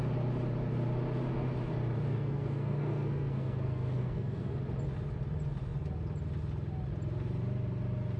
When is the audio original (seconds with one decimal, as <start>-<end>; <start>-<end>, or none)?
0.0-2.1; 4.6-8.2